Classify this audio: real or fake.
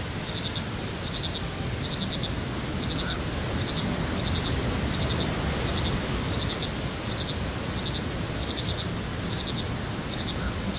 real